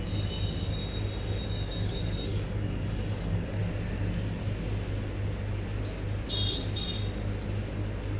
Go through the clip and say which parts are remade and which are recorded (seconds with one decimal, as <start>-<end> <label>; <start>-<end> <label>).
0.0-0.8 remade; 0.8-1.4 recorded; 1.4-3.6 remade; 3.6-8.2 recorded